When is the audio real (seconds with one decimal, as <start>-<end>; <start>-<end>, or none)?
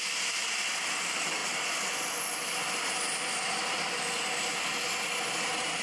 0.0-5.8